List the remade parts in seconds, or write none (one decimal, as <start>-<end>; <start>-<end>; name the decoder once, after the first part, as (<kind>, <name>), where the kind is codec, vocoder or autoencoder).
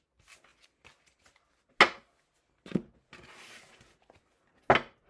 none